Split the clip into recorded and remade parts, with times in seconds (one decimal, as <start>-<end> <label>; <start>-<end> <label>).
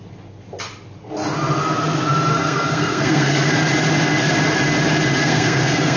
0.0-2.3 recorded; 2.3-3.5 remade; 3.5-5.2 recorded; 5.2-6.0 remade